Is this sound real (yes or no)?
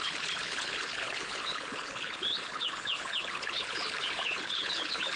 no